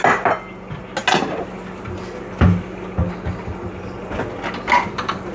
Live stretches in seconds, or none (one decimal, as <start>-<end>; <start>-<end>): 0.0-5.3